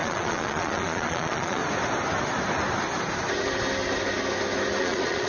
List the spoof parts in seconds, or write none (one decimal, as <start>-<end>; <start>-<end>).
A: 0.0-1.6; 4.8-5.3